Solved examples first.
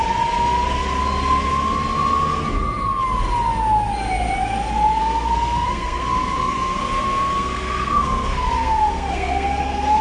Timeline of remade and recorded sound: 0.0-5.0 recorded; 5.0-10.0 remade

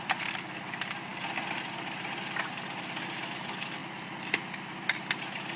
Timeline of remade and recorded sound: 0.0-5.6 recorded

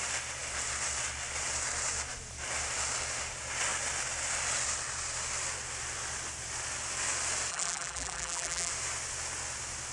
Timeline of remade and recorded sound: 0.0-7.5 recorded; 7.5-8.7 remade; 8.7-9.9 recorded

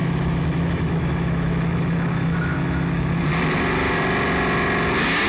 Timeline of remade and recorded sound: 0.0-3.2 remade; 3.2-5.3 recorded